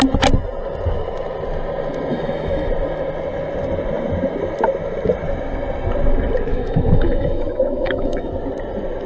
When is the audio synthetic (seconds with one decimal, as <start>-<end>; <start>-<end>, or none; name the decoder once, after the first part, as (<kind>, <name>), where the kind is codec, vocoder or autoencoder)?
2.1-2.7 (autoencoder, DAC-VAE); 6.5-8.3